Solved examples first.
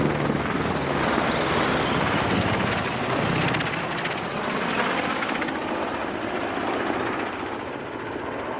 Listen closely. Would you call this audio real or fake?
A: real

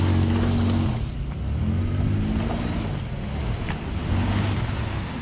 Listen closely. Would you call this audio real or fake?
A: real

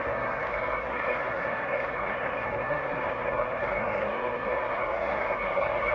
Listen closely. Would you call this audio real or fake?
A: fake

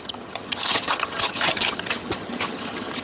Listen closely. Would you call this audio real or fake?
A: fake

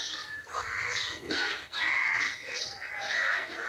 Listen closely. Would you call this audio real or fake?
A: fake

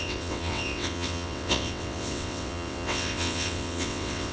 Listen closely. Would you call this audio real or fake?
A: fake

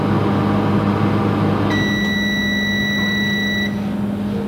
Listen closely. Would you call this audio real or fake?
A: real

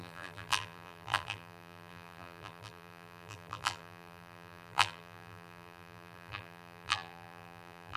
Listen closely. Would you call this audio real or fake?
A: fake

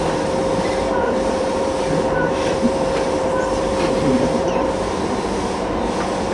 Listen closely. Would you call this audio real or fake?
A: fake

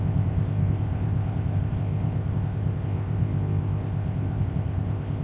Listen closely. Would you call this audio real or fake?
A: fake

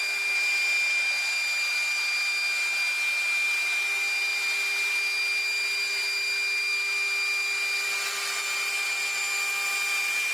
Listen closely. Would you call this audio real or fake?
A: real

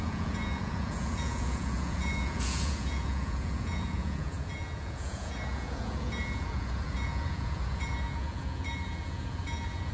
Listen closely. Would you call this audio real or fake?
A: fake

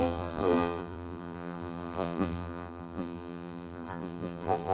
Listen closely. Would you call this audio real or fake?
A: fake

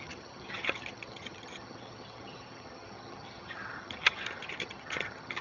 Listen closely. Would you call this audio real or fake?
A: fake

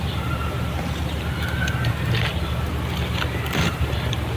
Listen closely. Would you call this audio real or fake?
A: fake